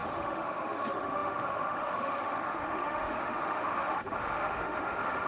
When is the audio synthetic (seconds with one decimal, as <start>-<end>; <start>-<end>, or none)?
0.0-5.3